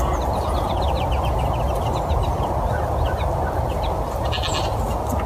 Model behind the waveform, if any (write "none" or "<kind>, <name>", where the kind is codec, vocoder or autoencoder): none